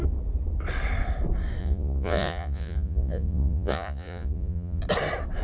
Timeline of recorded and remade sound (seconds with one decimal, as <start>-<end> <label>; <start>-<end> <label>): 0.0-1.6 recorded; 1.6-4.8 remade; 4.8-5.4 recorded